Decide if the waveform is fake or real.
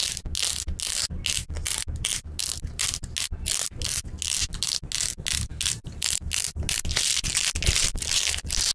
real